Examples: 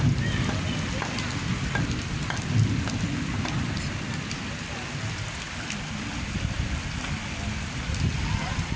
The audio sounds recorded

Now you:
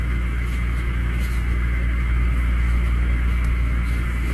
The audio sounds remade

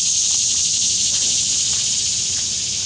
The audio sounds recorded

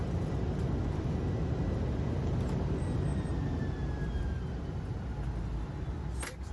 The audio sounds recorded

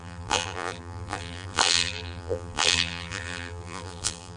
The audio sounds remade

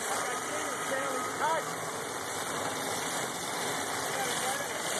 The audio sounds remade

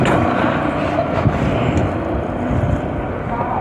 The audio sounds recorded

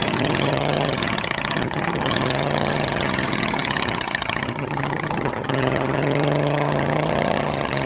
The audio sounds remade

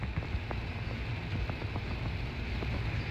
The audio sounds recorded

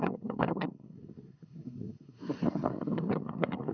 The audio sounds remade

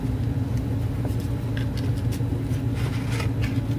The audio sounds recorded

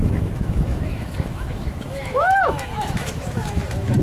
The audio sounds remade